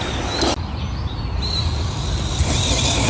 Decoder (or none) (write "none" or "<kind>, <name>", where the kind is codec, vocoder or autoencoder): none